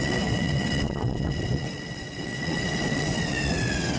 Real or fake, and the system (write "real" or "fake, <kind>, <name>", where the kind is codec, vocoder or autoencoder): fake, vocoder, WaveNeXt